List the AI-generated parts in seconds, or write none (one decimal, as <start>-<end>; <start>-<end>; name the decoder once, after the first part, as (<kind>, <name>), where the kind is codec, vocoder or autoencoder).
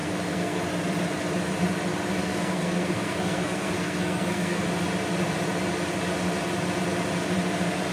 0.0-0.6 (codec, SNAC); 2.2-4.6